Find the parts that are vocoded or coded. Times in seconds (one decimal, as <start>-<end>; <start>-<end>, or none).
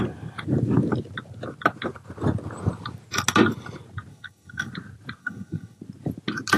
4.1-4.7; 5.2-5.8